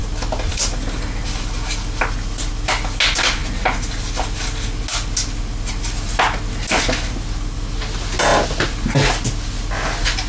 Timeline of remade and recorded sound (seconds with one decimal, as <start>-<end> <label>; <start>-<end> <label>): 0.0-10.3 recorded